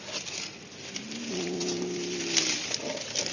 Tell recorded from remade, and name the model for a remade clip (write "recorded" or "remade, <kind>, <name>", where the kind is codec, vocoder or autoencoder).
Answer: recorded